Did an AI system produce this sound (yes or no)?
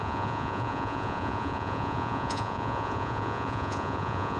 yes